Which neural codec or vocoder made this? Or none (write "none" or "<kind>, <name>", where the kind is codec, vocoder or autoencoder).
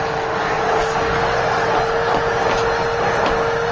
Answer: none